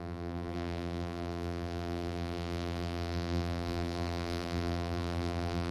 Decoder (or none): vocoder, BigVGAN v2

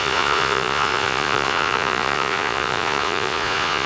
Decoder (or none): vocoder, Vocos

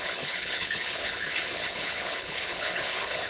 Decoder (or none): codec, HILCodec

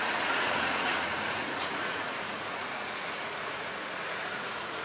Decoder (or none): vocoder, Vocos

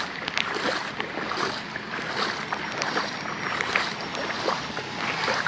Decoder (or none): none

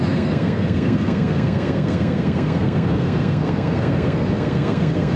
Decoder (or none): codec, SNAC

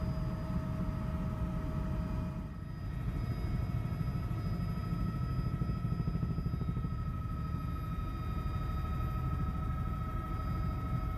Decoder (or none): none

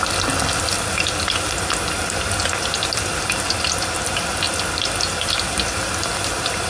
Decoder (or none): none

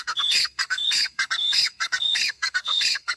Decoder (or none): codec, SNAC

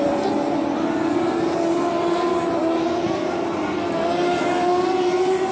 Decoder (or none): none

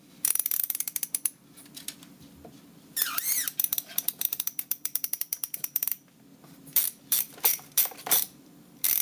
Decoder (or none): vocoder, BigVGAN v2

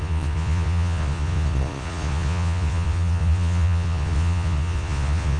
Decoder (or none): vocoder, Vocos